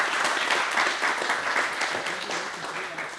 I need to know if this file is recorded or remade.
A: recorded